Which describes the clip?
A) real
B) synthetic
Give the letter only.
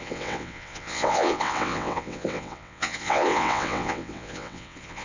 B